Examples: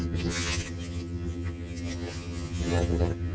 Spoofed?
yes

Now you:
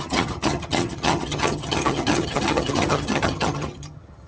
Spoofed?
yes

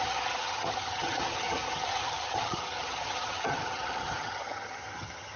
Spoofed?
yes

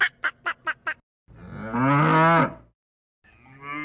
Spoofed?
no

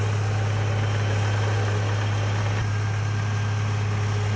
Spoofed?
no